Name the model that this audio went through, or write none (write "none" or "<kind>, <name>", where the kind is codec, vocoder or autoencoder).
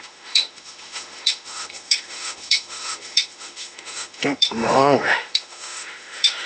autoencoder, DAC-VAE